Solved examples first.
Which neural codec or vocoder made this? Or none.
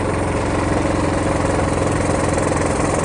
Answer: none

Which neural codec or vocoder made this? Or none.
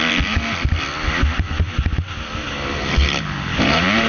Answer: none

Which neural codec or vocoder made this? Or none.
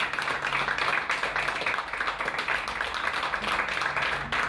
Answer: none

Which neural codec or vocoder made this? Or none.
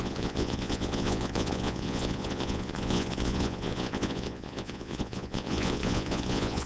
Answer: vocoder, Vocos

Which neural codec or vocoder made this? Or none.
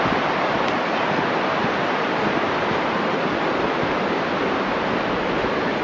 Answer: none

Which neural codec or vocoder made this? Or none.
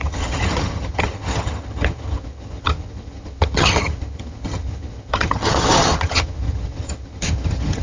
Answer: vocoder, HiFi-GAN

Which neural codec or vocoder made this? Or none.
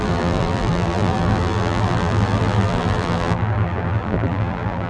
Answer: vocoder, BigVGAN v2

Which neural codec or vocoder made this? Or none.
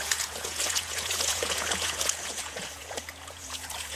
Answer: vocoder, Vocos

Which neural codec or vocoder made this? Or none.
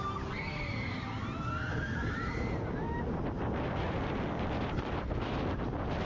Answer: none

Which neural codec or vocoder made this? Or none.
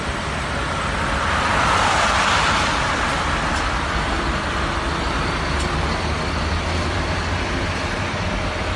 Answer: vocoder, BigVGAN v2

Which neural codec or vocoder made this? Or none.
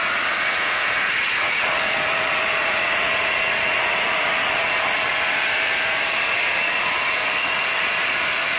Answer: vocoder, Vocos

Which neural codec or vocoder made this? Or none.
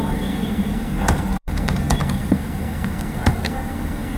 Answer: codec, SNAC